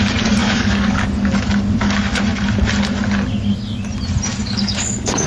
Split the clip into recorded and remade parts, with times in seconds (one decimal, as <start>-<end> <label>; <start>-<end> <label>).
0.0-0.4 recorded; 0.4-1.1 remade; 1.1-4.3 recorded; 4.3-5.3 remade